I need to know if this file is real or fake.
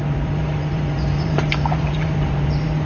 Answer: fake